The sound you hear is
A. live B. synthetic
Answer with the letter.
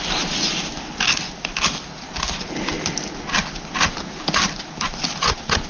A